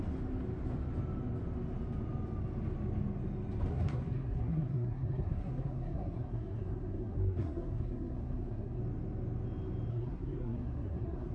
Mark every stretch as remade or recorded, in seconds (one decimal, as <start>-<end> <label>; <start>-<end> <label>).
0.0-3.7 recorded; 3.7-8.8 remade; 8.8-9.9 recorded; 9.9-11.3 remade